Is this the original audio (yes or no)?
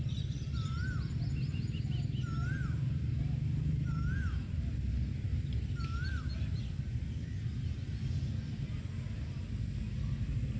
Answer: yes